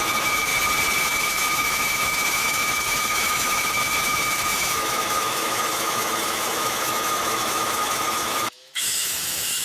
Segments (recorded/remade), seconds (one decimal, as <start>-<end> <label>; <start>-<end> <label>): 0.0-0.5 remade; 0.5-1.0 recorded; 1.0-9.6 remade